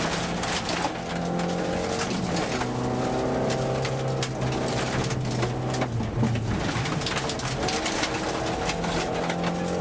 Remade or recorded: recorded